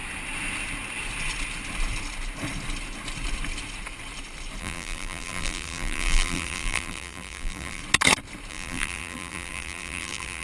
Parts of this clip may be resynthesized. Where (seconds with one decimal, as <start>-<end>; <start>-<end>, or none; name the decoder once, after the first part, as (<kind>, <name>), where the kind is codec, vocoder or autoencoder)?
4.6-7.8 (vocoder, BigVGAN v2); 8.5-10.4